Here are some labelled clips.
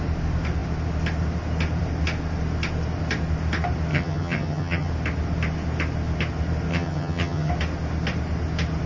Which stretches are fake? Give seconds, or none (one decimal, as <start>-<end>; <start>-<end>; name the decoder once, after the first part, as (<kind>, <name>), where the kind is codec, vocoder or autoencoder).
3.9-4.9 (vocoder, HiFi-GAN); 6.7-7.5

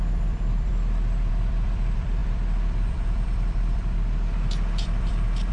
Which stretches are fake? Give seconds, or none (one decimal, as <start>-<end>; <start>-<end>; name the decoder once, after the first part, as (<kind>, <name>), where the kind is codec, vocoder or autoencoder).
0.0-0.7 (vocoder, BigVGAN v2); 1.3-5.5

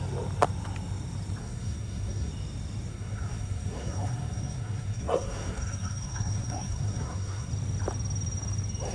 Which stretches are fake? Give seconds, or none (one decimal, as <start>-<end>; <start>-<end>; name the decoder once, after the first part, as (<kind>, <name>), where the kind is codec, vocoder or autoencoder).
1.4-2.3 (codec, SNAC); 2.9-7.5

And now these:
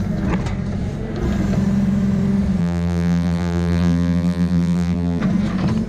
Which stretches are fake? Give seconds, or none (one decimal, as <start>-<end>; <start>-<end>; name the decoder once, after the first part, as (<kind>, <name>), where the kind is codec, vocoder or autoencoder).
2.6-5.2 (vocoder, BigVGAN v2)

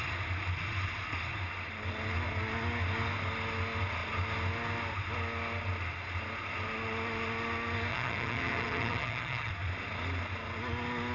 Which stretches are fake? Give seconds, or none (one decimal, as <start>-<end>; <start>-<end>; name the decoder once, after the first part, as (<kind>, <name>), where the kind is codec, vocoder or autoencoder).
7.9-9.5 (vocoder, HiFi-GAN)

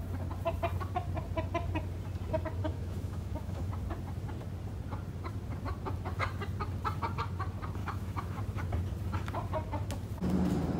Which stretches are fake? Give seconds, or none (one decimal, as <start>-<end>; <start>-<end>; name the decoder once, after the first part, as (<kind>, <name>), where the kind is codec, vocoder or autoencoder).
2.7-3.7 (autoencoder, DAC-VAE); 7.8-8.4

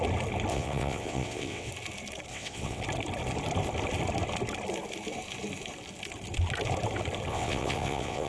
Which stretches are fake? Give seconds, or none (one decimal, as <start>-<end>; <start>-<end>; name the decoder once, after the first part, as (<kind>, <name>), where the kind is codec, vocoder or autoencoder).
0.5-1.7 (vocoder, WaveNeXt); 2.3-2.8; 7.3-8.3

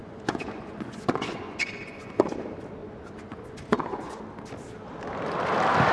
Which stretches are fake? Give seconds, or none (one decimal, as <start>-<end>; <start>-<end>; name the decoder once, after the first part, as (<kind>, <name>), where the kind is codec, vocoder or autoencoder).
0.0-2.3 (vocoder, Vocos); 2.8-4.2